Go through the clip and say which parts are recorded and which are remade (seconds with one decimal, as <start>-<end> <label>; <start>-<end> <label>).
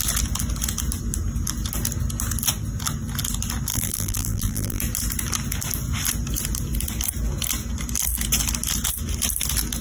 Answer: 0.0-3.7 recorded; 3.7-4.8 remade; 4.8-9.8 recorded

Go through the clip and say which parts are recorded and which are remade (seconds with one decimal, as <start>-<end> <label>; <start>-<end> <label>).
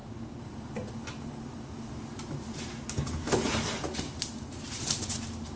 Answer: 0.0-5.6 recorded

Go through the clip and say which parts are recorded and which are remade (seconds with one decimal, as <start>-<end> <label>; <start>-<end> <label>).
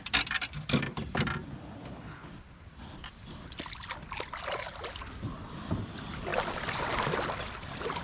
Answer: 0.0-1.8 recorded; 1.8-2.3 remade; 2.3-8.0 recorded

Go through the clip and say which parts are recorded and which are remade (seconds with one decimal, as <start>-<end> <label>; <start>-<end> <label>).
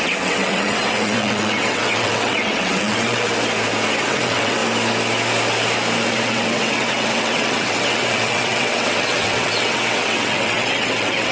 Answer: 0.0-3.3 remade; 3.3-4.0 recorded; 4.0-4.6 remade; 4.6-6.0 recorded; 6.0-11.3 remade